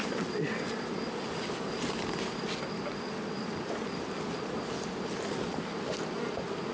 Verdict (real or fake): real